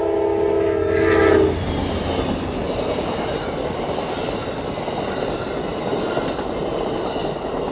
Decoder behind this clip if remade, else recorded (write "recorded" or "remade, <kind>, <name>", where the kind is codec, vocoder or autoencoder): recorded